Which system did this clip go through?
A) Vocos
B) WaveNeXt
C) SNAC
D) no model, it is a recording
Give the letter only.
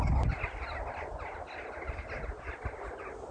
D